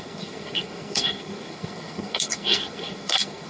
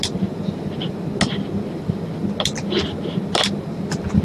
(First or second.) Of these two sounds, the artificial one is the first